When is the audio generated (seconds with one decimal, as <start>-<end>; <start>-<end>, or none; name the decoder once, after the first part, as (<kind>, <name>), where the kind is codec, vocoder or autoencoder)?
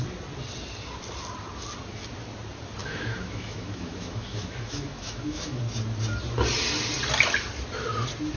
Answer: 2.8-5.6 (autoencoder, DAC-VAE)